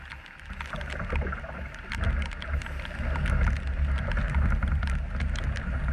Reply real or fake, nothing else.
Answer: real